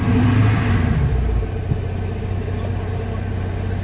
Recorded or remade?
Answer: recorded